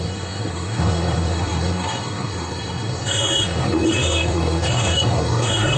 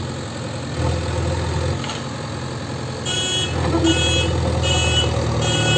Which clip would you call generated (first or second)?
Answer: first